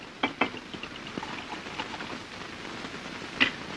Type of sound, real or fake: real